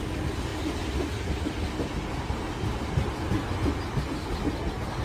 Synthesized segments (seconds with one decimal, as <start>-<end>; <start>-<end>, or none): none